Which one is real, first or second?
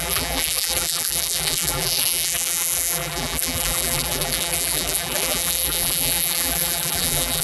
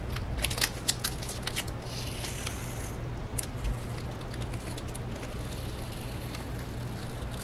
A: second